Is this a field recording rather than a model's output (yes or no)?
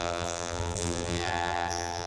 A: no